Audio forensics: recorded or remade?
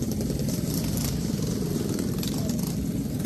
recorded